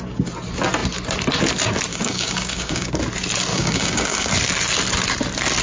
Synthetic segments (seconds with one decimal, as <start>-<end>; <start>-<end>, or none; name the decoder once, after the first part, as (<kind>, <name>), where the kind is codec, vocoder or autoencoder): 1.9-2.9 (codec, DAC); 3.5-4.3